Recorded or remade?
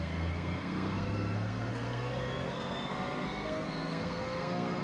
remade